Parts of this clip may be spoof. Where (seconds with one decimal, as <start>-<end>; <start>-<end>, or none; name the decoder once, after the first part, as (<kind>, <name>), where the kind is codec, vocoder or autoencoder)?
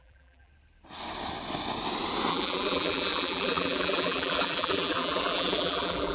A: 0.0-0.5 (vocoder, BigVGAN v2); 2.3-6.1